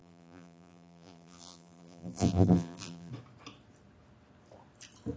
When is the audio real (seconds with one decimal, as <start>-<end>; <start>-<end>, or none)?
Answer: 3.1-5.2